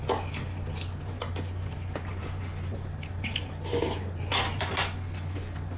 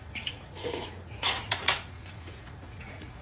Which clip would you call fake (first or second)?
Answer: second